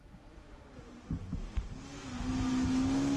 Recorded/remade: recorded